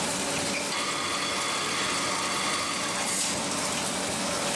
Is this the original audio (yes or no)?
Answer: yes